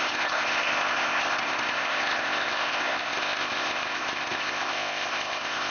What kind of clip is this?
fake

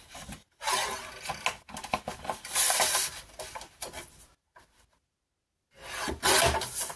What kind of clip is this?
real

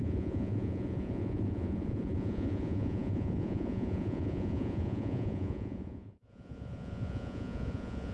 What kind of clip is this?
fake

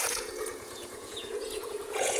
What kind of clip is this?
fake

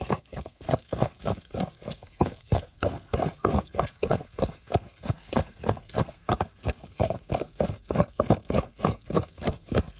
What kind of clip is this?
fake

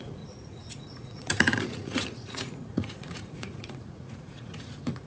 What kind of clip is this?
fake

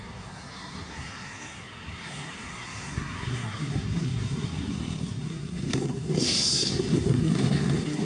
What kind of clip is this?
fake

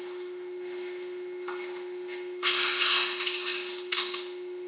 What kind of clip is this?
fake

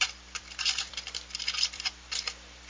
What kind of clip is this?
fake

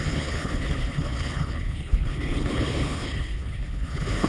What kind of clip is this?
fake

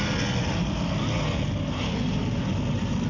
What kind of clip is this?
real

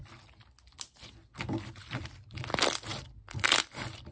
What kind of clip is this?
real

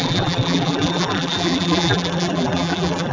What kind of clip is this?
fake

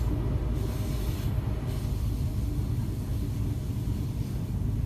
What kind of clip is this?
real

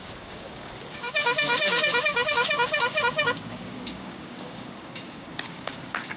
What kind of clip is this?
fake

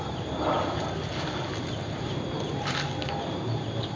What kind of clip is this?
real